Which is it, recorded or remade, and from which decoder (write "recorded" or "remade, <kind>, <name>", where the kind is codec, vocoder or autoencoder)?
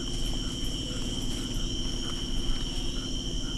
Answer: recorded